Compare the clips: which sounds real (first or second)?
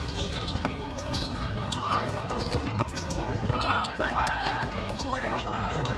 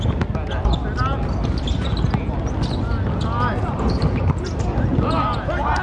second